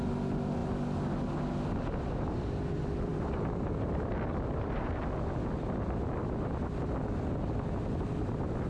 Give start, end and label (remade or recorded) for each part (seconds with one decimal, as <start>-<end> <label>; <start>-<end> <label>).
0.0-8.7 recorded